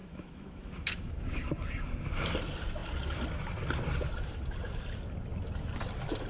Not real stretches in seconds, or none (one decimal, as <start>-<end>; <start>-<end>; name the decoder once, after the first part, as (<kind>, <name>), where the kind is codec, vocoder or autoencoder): 0.0-1.3 (autoencoder, DAC-VAE)